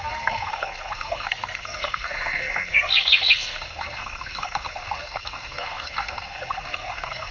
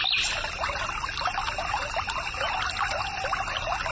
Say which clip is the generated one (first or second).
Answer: first